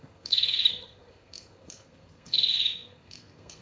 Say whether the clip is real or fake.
fake